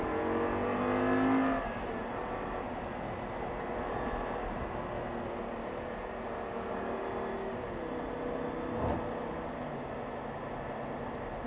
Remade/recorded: recorded